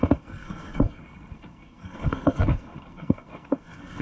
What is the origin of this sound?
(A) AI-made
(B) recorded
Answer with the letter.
A